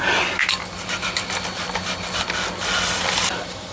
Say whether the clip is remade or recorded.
recorded